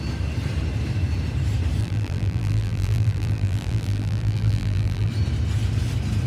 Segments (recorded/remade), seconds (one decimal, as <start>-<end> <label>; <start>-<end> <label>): 0.0-1.8 recorded; 1.8-5.1 remade; 5.1-6.3 recorded